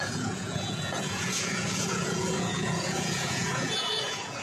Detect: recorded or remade remade